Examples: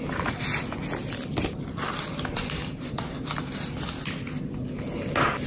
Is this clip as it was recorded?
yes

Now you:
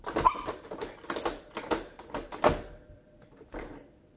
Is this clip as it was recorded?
no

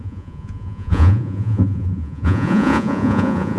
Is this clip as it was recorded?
no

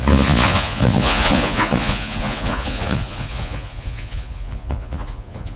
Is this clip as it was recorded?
no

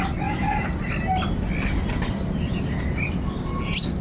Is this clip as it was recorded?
yes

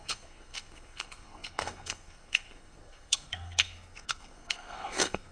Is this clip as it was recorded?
no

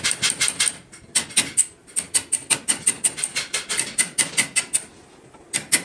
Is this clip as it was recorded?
yes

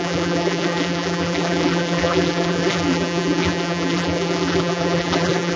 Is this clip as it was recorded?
no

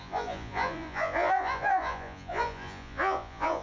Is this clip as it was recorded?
no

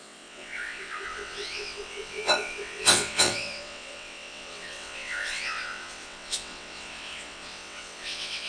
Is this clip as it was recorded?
no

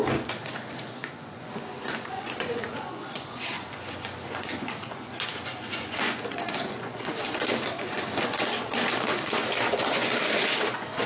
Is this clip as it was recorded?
no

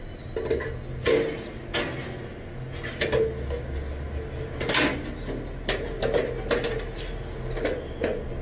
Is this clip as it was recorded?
yes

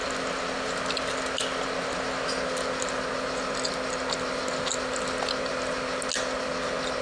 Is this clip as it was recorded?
yes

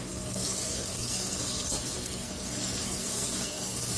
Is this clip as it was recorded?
no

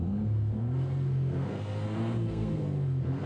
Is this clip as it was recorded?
no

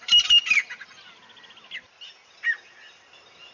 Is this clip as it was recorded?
yes